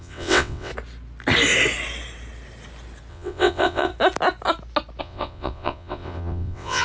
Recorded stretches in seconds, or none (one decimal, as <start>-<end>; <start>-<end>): 0.7-3.1; 3.9-5.0